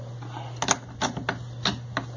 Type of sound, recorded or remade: recorded